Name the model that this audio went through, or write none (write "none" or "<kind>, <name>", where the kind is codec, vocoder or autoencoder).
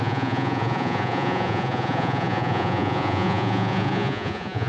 vocoder, Vocos